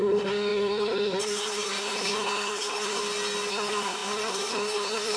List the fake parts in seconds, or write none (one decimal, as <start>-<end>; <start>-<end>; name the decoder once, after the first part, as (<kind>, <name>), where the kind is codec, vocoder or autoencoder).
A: 0.0-3.0 (codec, SNAC); 3.5-5.2

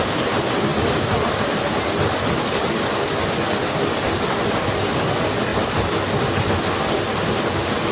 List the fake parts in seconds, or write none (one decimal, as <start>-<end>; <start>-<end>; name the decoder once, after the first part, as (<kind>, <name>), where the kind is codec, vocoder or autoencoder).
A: 0.7-1.3 (vocoder, BigVGAN v2)